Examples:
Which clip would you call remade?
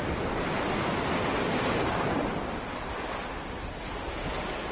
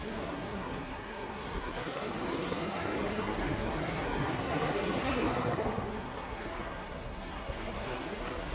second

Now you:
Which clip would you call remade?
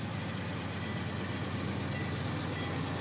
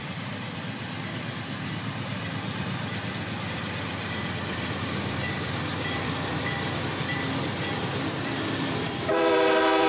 second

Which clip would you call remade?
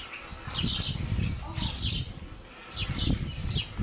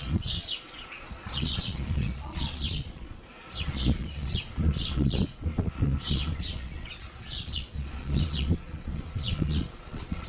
second